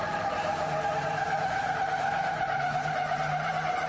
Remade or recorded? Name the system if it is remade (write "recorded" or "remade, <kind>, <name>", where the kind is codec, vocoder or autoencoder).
remade, vocoder, BigVGAN v2